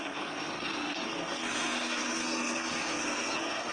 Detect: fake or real fake